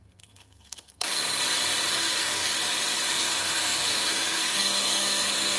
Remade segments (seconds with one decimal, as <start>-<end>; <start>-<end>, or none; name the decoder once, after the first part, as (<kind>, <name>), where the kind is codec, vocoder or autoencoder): 0.0-1.2 (codec, SNAC); 1.9-2.5; 3.1-5.6